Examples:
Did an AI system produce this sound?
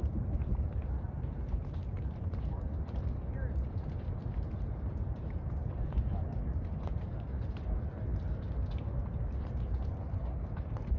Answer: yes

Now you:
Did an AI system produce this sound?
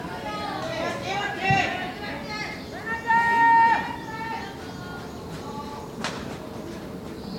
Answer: no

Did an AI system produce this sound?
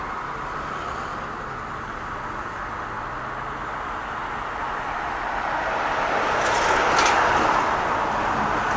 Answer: no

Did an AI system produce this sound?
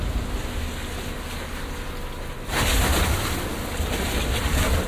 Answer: no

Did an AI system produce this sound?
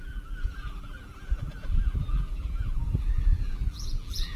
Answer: yes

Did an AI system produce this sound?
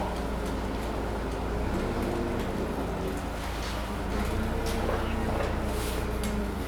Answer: no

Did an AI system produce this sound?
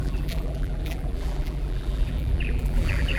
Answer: yes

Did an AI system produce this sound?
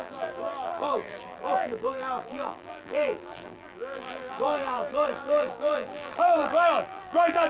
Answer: yes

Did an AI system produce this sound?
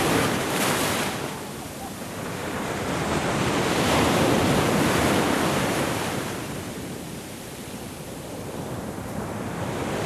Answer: yes